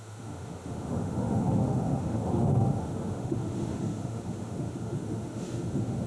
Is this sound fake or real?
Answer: fake